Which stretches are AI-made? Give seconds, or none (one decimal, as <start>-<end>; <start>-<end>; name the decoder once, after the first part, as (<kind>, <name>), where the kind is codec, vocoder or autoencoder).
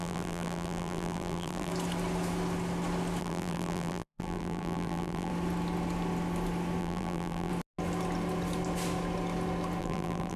0.0-1.7 (vocoder, BigVGAN v2); 3.2-5.3; 6.8-7.5; 9.8-10.4